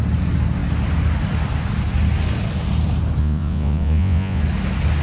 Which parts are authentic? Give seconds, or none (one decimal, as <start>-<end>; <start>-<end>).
0.0-3.2; 4.4-5.0